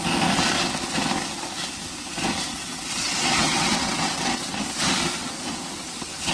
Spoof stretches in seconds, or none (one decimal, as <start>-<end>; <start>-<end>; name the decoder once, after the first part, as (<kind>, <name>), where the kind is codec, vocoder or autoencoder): 2.5-4.6 (vocoder, WaveNeXt)